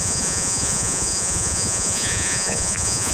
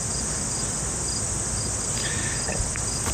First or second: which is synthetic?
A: first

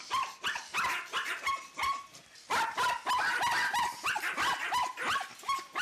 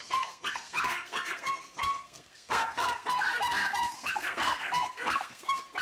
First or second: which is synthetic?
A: second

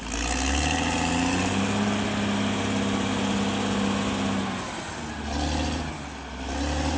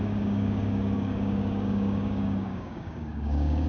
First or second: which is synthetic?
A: second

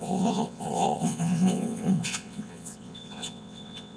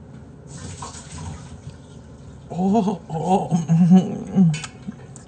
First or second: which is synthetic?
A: first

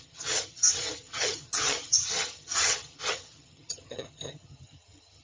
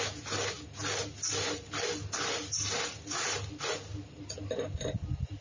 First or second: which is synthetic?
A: first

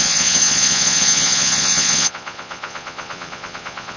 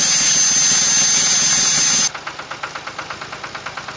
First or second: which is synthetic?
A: first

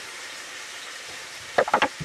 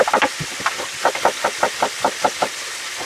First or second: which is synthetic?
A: first